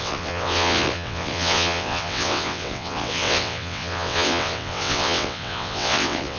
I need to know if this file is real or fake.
fake